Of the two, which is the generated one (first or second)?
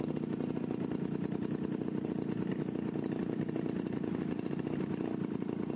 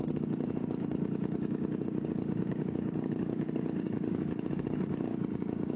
second